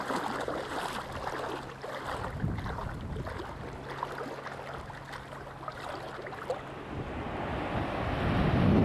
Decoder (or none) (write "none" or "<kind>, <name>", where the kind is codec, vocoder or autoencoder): none